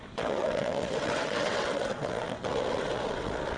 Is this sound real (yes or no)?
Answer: no